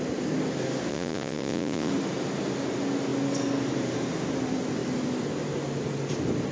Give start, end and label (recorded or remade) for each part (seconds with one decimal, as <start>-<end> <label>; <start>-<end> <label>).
0.0-0.9 recorded; 0.9-1.9 remade; 1.9-6.5 recorded